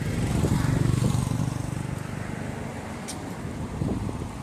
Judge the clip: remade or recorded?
recorded